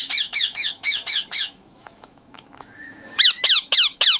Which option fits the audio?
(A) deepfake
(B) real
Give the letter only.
A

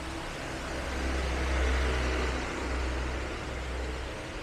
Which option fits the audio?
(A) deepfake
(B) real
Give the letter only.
B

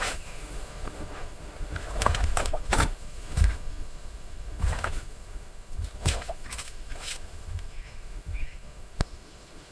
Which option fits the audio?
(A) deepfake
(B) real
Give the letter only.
A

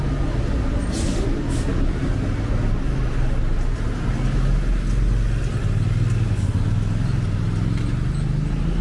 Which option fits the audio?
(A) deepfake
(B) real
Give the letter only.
B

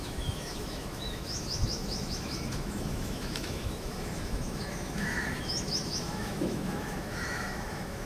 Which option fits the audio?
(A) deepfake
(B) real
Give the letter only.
A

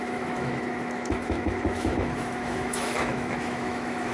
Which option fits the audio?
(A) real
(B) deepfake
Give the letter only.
B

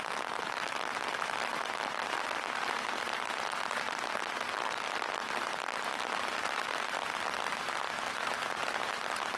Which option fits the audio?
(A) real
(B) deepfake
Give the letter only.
A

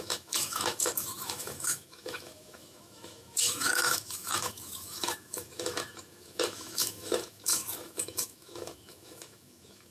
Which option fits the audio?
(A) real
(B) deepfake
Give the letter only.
B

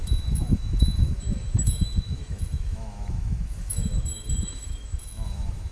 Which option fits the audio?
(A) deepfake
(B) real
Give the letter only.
A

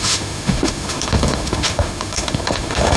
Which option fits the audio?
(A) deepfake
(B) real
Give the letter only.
A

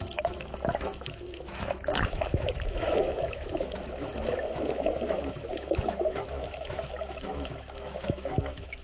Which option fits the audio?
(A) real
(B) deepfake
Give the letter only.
B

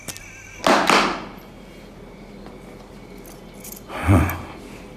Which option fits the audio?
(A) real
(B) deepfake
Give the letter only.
A